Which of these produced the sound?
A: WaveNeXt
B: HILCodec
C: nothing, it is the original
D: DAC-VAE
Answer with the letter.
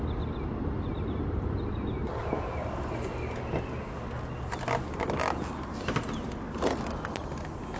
C